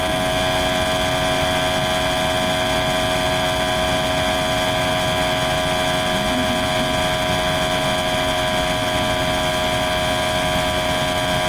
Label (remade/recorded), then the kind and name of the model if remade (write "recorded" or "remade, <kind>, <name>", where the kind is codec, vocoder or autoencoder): recorded